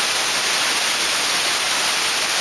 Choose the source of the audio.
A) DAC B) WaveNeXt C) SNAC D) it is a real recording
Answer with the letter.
D